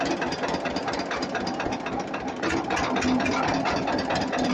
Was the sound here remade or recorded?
recorded